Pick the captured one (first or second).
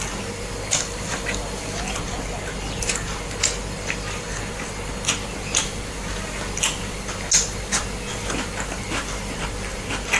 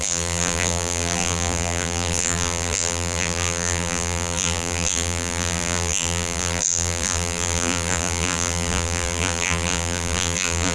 first